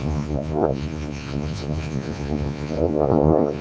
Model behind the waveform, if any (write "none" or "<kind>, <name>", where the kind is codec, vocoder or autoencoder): vocoder, Vocos